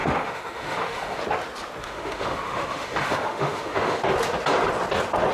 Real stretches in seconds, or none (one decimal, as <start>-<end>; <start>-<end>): 1.2-1.8; 4.0-5.3